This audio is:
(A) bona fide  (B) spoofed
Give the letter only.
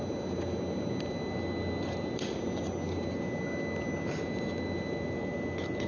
A